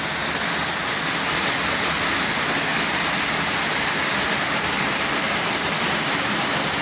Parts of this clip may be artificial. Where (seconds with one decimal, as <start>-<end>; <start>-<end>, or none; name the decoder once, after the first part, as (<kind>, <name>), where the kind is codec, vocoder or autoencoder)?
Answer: none